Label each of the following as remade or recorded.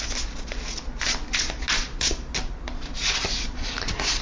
recorded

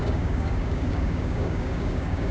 remade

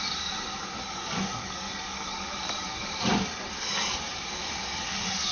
remade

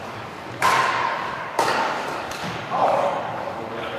remade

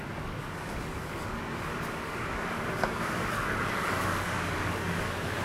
remade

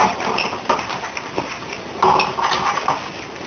recorded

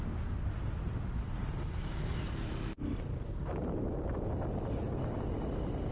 recorded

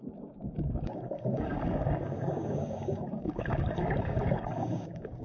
remade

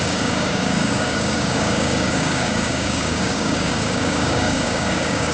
remade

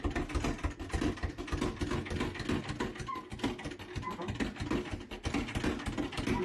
recorded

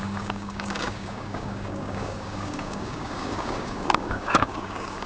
remade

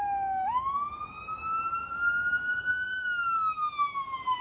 recorded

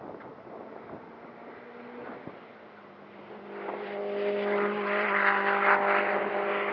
recorded